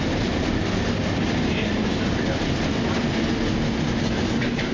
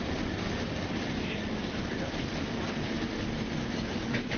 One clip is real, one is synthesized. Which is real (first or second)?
first